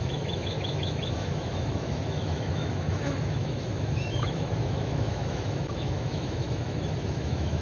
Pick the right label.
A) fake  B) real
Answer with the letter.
A